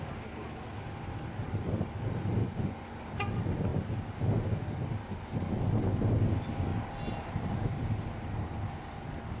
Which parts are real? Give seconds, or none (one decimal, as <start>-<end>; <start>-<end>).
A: 0.0-2.4; 3.0-9.4